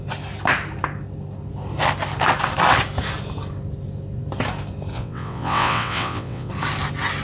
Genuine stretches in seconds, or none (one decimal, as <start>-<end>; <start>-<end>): 0.0-4.9; 6.5-7.2